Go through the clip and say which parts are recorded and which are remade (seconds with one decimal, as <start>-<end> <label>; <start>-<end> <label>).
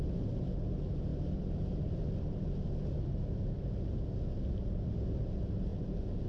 0.0-1.1 recorded; 1.1-2.0 remade; 2.0-6.3 recorded